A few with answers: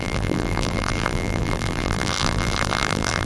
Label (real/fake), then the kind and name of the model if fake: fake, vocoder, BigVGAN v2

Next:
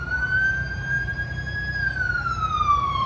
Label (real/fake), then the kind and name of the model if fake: fake, vocoder, BigVGAN v2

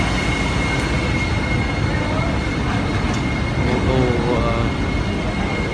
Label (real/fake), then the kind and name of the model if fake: real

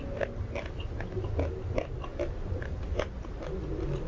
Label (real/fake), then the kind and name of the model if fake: real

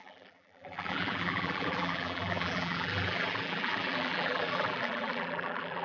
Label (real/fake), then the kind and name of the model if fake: fake, vocoder, BigVGAN v2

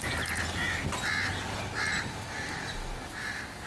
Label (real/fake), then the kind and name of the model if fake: real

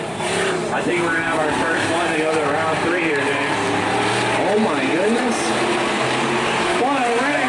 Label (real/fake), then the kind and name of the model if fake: fake, vocoder, BigVGAN v2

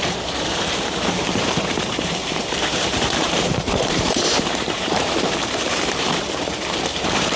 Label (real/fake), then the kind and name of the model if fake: fake, vocoder, BigVGAN v2